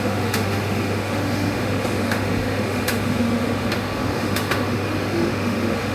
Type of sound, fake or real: fake